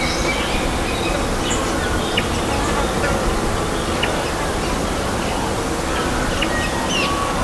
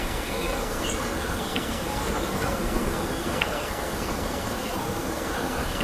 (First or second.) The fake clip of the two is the second